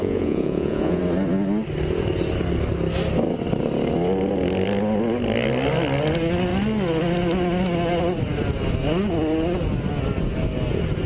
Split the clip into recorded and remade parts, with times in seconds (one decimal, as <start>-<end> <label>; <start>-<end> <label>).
0.0-1.0 remade; 1.0-11.1 recorded

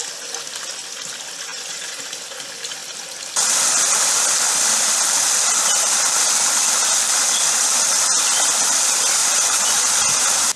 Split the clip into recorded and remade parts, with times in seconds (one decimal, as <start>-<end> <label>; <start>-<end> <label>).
0.0-1.5 recorded; 1.5-2.0 remade; 2.0-9.2 recorded; 9.2-9.9 remade; 9.9-10.6 recorded

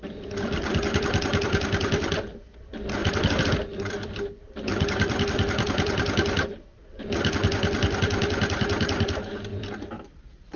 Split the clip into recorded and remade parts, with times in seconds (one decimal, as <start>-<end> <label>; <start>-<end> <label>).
0.0-3.0 remade; 3.0-3.5 recorded; 3.5-10.6 remade

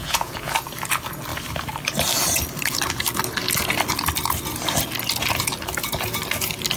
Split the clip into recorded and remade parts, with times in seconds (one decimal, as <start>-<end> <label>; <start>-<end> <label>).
0.0-0.5 remade; 0.5-6.8 recorded

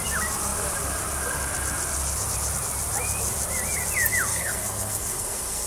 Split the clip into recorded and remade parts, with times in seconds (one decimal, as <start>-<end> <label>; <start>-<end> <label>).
0.0-4.3 recorded; 4.3-5.7 remade